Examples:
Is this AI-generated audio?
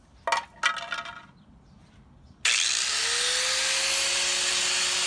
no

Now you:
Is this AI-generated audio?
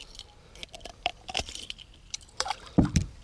yes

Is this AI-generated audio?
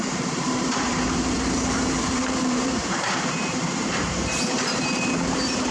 yes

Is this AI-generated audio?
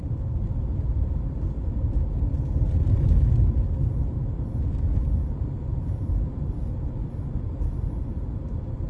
no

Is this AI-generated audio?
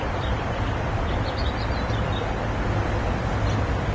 yes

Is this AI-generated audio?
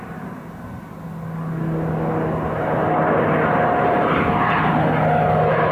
no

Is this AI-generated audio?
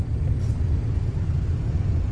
no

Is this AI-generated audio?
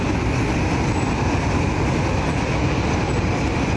no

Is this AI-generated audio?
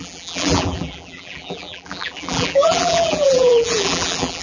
yes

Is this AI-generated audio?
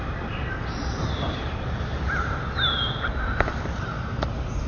yes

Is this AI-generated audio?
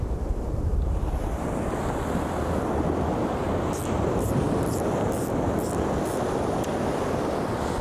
yes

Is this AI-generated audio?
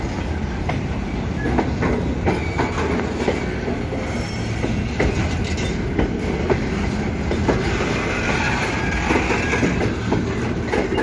no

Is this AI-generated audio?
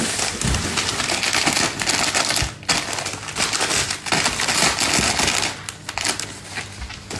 no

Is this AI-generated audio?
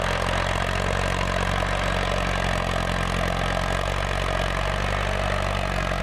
no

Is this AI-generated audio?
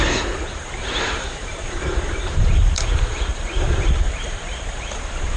yes